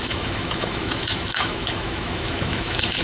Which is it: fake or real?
fake